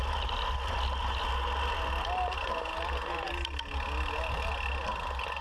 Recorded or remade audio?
recorded